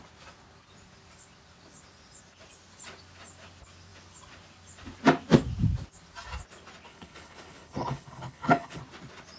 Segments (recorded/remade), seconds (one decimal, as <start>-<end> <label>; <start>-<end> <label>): 0.0-6.9 recorded; 6.9-8.8 remade; 8.8-9.4 recorded